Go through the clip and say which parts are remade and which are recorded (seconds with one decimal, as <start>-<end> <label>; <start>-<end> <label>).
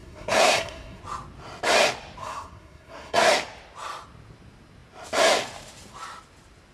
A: 0.0-1.0 remade; 1.0-2.2 recorded; 2.2-3.3 remade; 3.3-6.7 recorded